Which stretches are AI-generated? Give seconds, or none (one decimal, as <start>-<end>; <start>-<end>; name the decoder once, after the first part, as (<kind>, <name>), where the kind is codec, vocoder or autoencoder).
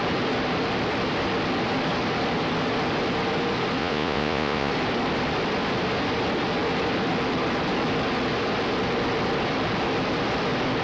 3.8-4.7 (vocoder, Vocos)